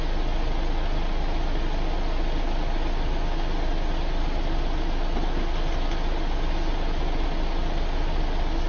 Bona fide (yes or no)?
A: yes